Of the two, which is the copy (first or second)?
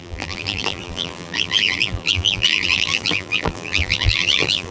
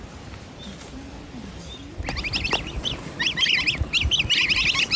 first